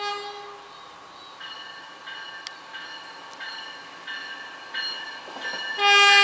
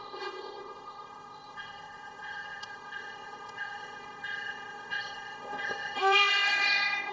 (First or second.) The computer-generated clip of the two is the second